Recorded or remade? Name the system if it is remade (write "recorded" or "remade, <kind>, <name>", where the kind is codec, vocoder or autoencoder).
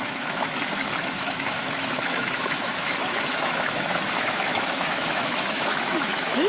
remade, autoencoder, DAC-VAE